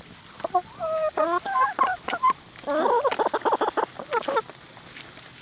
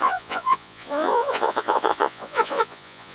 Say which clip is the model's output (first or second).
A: second